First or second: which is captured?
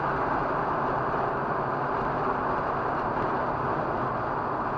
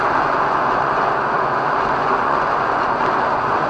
first